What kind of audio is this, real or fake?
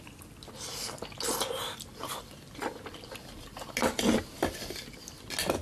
real